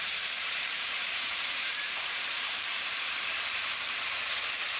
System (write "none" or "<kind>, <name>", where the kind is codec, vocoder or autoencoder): vocoder, BigVGAN v2